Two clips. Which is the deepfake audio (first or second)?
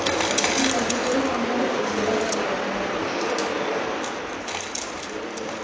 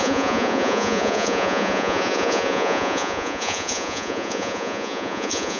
second